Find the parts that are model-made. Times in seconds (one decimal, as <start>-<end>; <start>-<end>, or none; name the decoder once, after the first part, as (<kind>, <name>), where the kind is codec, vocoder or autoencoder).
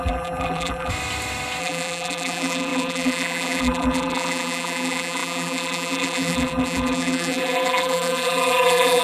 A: 0.0-0.9 (vocoder, BigVGAN v2); 1.6-9.0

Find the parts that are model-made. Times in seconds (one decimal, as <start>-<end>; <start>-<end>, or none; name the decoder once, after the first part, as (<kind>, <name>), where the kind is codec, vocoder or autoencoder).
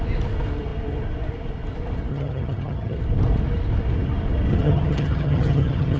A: 2.1-3.0 (vocoder, HiFi-GAN); 4.5-6.0